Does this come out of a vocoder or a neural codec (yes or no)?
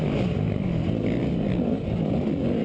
no